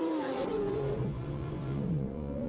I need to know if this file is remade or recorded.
remade